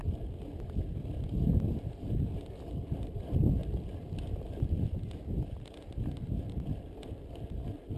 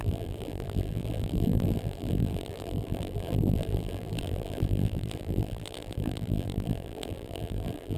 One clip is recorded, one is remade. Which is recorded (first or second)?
first